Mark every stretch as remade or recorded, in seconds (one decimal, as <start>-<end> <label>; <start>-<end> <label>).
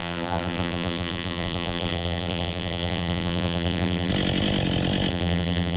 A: 0.0-4.1 remade; 4.1-5.1 recorded; 5.1-5.8 remade